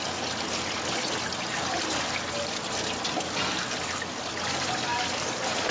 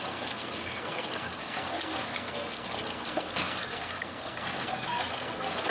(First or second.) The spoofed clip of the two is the second